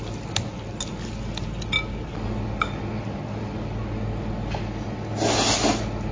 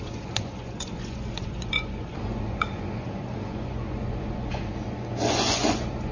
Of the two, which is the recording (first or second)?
first